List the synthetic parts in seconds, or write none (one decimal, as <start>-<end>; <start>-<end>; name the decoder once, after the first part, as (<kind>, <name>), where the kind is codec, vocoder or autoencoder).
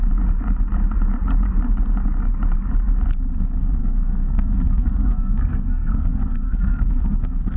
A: 3.8-7.6 (codec, SNAC)